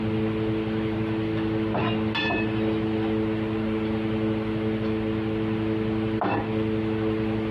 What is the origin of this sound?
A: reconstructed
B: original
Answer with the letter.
B